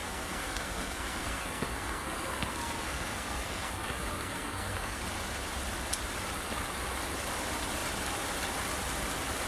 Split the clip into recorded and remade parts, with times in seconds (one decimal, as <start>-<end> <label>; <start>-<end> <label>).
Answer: 0.0-5.0 remade; 5.0-9.5 recorded

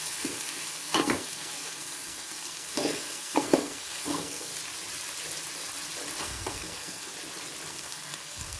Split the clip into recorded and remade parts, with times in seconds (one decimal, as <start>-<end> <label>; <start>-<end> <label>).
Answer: 0.0-4.5 remade; 4.5-6.2 recorded; 6.2-7.1 remade; 7.1-7.7 recorded; 7.7-8.6 remade

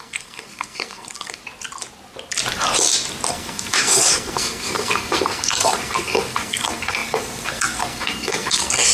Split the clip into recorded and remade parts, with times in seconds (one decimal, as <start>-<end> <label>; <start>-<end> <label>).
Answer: 0.0-1.4 remade; 1.4-3.3 recorded; 3.3-8.9 remade